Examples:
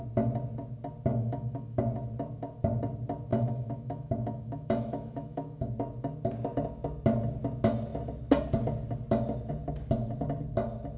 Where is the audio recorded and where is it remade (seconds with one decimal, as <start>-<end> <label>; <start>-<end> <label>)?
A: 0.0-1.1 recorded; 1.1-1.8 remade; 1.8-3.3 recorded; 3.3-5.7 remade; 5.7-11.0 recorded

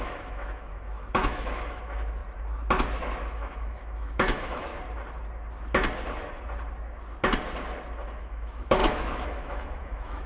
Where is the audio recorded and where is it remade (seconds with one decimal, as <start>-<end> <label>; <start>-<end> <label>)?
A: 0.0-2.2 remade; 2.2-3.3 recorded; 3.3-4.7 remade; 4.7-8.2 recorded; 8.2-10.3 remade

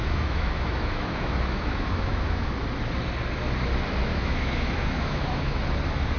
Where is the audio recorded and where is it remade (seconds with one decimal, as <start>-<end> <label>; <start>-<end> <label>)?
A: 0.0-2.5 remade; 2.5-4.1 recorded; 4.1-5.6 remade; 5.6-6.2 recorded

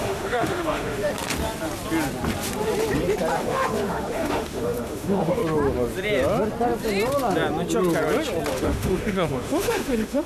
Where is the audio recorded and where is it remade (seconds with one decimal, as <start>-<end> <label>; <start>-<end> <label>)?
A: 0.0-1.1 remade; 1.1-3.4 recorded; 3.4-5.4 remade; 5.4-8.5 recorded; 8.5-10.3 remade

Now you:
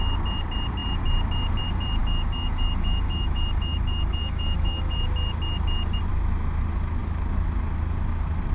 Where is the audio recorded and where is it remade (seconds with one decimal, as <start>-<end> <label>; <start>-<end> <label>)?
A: 0.0-2.0 recorded; 2.0-5.0 remade; 5.0-6.1 recorded; 6.1-6.6 remade; 6.6-8.5 recorded

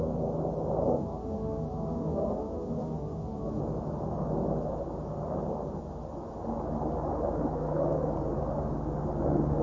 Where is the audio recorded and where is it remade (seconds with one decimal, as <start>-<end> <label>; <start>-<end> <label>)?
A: 0.0-0.8 recorded; 0.8-3.6 remade; 3.6-9.6 recorded